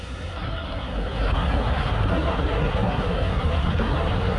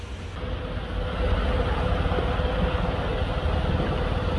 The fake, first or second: first